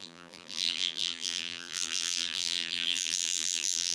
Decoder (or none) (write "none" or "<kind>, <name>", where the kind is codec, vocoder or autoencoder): vocoder, BigVGAN v2